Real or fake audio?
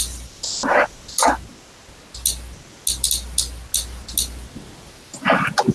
real